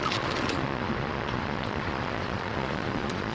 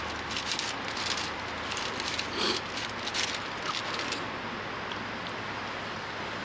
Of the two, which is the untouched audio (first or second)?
second